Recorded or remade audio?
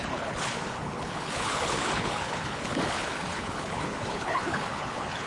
remade